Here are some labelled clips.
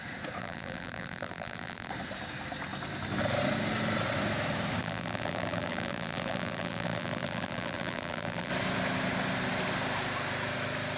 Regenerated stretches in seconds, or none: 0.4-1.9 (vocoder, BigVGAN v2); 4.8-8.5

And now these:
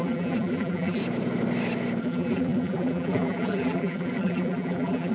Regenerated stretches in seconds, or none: 0.0-1.0 (vocoder, BigVGAN v2); 2.0-5.1

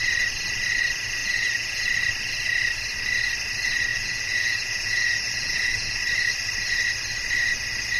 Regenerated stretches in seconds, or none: 1.2-1.8 (vocoder, Vocos); 3.9-6.0

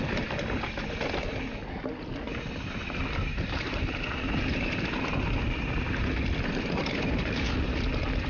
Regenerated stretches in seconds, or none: 3.3-3.8 (vocoder, BigVGAN v2); 6.8-7.4